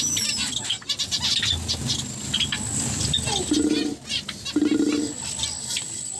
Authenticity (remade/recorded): recorded